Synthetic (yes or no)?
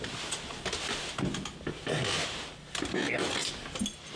no